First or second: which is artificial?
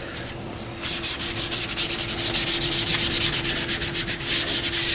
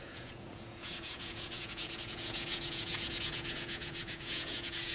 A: second